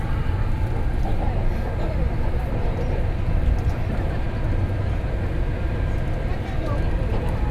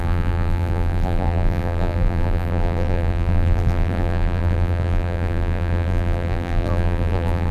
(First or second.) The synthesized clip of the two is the second